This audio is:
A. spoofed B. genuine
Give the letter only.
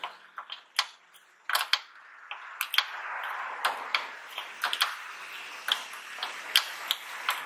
B